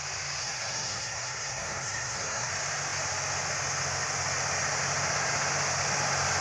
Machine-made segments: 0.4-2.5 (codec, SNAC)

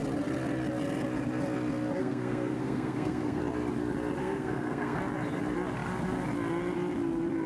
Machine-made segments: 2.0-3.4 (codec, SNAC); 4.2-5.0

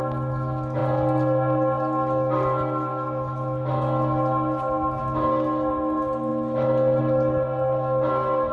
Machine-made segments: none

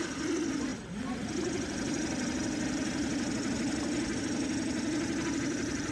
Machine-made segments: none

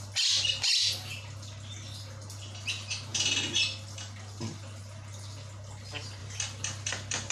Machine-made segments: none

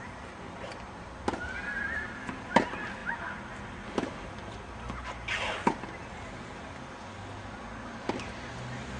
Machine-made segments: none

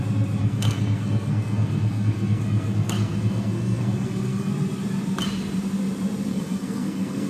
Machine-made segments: 0.4-4.5 (codec, SNAC); 6.3-7.3

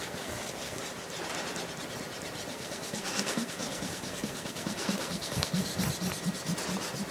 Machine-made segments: 0.0-0.8 (codec, SNAC); 2.5-5.7